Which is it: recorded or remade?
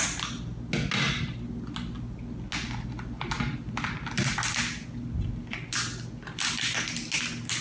recorded